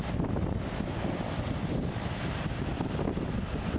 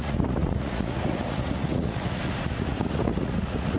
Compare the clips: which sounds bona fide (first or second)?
first